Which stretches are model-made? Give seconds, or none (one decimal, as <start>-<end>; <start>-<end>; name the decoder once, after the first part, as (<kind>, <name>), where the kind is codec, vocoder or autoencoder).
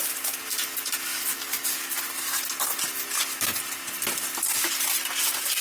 1.3-2.0 (codec, DAC)